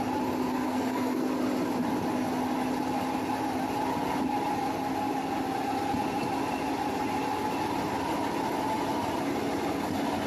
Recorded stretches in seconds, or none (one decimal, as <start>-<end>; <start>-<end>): 0.0-0.5; 1.3-10.3